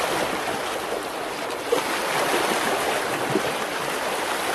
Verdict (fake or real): fake